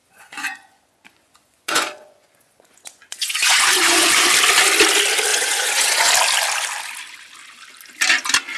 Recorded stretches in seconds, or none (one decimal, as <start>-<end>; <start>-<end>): 4.3-5.3; 6.1-8.6